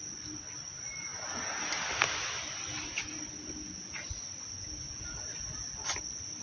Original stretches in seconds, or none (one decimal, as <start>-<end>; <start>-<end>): 0.0-6.4